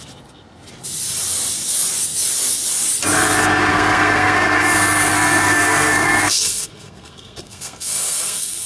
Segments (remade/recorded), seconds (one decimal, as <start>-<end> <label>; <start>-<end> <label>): 0.0-3.7 recorded; 3.7-8.7 remade